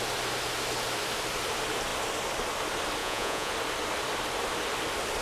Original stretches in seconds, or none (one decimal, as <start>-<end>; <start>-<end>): 0.0-3.0; 3.5-5.2